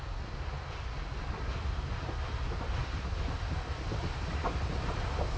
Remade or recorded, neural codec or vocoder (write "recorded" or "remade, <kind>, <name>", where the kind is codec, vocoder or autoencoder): recorded